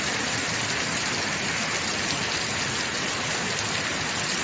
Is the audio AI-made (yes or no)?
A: no